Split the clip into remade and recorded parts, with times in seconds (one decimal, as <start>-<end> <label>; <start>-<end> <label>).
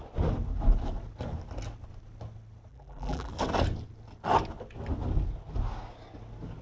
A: 0.0-2.7 recorded; 2.7-3.3 remade; 3.3-6.6 recorded